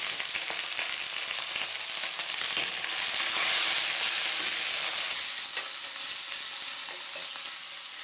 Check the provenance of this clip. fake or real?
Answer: real